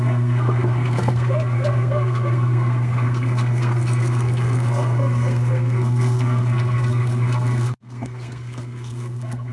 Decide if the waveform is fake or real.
fake